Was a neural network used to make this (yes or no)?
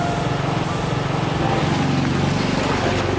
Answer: no